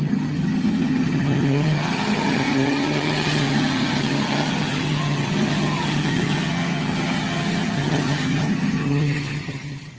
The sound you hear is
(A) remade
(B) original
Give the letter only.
A